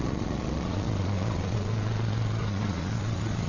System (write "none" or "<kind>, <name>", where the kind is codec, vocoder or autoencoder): vocoder, Vocos